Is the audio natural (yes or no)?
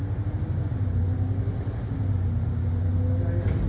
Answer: yes